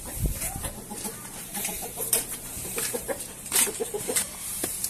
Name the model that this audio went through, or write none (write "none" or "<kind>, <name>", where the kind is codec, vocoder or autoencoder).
vocoder, BigVGAN v2